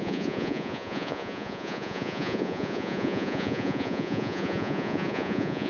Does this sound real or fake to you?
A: fake